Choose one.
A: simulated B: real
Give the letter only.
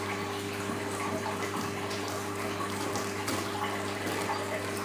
B